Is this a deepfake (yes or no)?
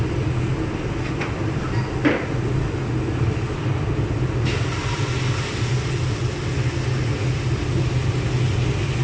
no